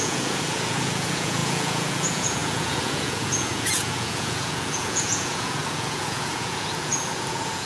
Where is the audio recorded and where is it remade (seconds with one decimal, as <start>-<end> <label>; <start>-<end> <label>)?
0.0-7.7 remade